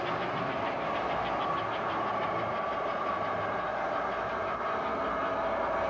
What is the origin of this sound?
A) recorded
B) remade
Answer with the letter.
A